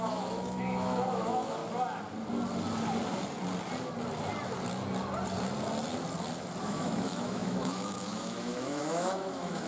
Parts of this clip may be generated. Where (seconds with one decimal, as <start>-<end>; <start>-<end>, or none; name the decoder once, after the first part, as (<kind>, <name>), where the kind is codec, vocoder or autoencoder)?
0.0-1.6 (autoencoder, DAC-VAE); 6.6-9.7